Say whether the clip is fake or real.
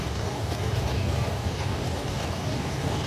fake